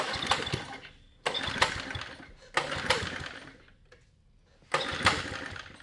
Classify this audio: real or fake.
real